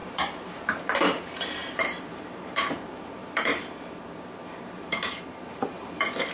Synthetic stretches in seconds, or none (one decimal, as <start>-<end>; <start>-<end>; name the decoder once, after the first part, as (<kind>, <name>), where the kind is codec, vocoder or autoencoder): 0.0-6.3 (vocoder, BigVGAN v2)